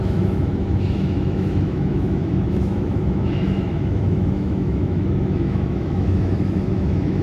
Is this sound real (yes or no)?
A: no